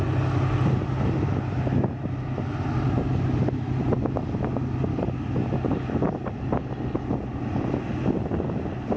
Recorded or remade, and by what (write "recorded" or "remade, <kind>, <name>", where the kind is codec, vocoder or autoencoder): recorded